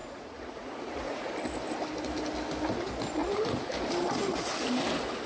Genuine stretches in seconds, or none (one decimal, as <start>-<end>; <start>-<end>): 1.3-3.2; 3.7-5.3

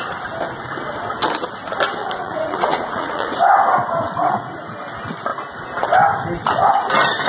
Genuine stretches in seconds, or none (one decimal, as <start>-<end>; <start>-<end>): 0.0-2.0; 3.3-7.3

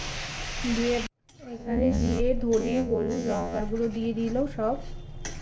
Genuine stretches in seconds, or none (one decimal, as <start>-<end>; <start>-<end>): 0.0-1.6; 2.2-2.6; 3.6-5.4

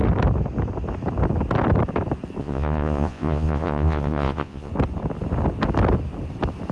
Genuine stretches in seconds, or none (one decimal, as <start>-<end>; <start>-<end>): 0.0-2.4; 4.7-6.7

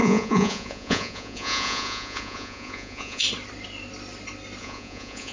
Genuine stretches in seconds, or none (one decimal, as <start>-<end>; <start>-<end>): 3.2-4.6

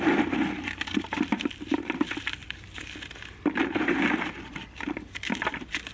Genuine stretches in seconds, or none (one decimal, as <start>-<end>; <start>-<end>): 0.0-5.9